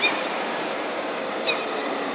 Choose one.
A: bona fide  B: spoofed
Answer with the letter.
B